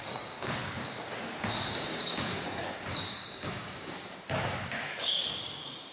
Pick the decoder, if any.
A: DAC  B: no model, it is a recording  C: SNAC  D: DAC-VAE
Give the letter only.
A